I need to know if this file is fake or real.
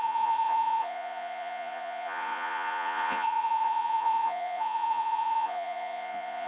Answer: fake